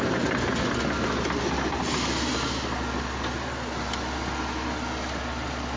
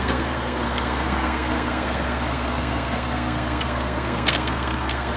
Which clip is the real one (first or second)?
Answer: first